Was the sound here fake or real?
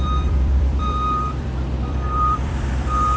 fake